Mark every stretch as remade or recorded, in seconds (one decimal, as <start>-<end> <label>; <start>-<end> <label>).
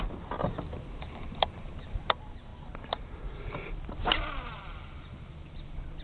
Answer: 0.0-0.4 recorded; 0.4-2.1 remade; 2.1-2.5 recorded; 2.5-6.0 remade